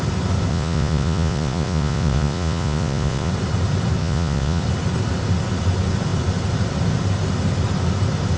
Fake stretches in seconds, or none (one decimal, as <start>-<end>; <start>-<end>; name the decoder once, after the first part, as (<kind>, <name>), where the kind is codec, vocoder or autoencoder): 0.5-3.3 (vocoder, Vocos); 4.0-4.6